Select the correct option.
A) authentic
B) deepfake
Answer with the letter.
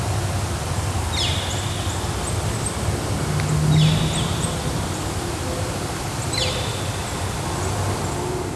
A